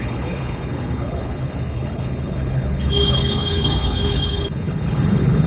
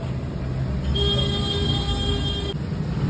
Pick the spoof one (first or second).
first